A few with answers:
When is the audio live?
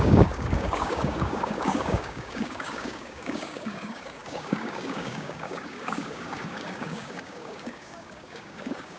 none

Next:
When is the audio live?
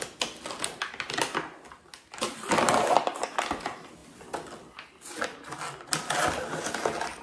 0.0-7.2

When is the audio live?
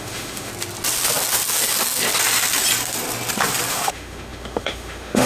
0.5-3.7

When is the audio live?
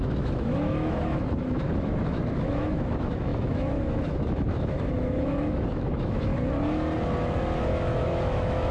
6.3-7.7